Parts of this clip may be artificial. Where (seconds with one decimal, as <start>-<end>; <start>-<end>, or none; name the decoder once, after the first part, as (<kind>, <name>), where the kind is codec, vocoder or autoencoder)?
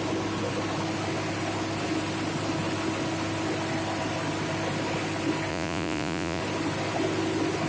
5.5-6.4 (vocoder, Vocos)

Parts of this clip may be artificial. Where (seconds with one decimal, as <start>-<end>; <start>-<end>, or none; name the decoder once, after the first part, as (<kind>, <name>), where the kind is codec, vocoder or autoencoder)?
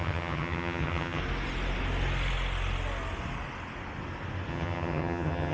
0.0-1.2 (vocoder, HiFi-GAN); 4.5-5.5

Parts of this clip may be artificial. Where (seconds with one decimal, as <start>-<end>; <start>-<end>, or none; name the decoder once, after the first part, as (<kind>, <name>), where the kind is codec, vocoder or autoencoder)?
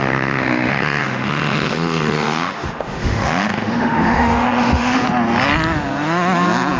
0.0-5.0 (autoencoder, DAC-VAE)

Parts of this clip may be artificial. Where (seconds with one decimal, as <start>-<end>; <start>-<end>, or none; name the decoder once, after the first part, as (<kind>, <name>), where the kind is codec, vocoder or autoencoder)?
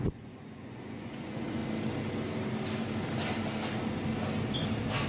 0.0-1.6 (vocoder, Vocos)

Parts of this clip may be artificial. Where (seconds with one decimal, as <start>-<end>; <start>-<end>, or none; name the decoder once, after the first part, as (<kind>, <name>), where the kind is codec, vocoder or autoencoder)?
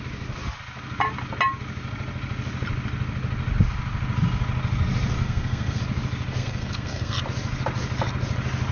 5.2-5.8 (codec, SNAC); 6.4-7.2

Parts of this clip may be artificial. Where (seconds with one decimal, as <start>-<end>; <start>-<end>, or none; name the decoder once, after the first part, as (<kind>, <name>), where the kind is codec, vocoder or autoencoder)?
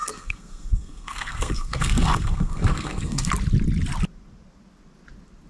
0.0-3.3 (codec, SNAC)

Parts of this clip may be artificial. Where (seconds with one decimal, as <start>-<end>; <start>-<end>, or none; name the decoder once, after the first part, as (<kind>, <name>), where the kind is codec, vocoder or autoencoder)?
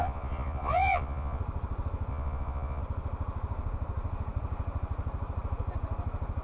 0.0-1.4 (vocoder, Vocos); 2.1-2.8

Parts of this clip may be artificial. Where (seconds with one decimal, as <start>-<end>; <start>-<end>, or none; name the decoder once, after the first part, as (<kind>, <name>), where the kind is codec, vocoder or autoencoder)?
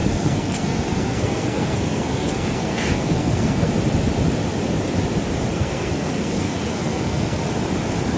0.0-3.7 (codec, SNAC); 5.5-7.5